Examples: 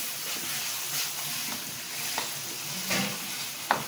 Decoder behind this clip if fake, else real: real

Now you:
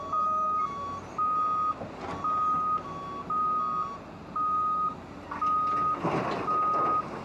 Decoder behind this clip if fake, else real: real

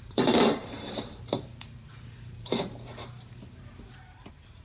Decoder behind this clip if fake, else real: fake, vocoder, BigVGAN v2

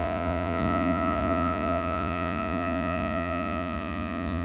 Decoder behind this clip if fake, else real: fake, vocoder, Vocos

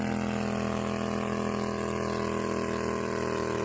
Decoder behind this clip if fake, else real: real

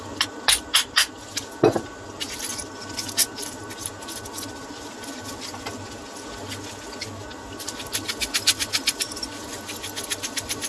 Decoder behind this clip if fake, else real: real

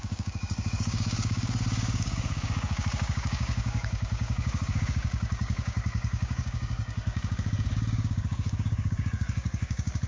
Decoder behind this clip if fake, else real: fake, codec, DAC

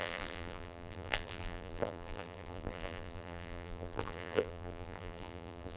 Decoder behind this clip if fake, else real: fake, vocoder, BigVGAN v2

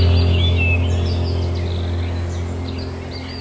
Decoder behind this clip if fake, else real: real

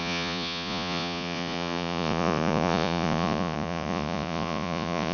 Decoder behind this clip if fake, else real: fake, vocoder, Vocos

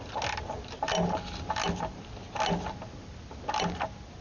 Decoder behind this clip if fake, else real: real